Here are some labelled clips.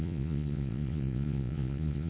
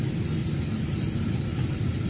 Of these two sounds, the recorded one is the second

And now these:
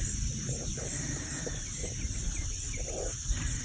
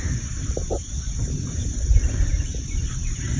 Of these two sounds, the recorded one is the first